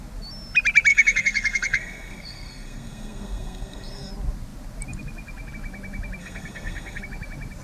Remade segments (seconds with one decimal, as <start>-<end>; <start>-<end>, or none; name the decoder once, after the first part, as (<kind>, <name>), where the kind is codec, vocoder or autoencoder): 0.9-4.1 (codec, SNAC); 6.2-7.0